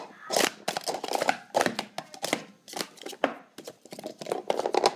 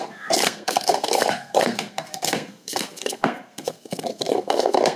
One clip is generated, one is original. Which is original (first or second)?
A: first